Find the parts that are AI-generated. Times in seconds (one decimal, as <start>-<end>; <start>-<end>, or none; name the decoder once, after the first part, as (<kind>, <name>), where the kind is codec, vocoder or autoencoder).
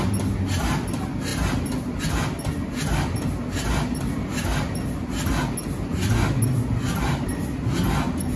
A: none